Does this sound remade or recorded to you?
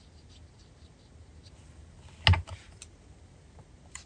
recorded